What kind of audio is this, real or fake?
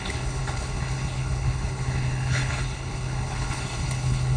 fake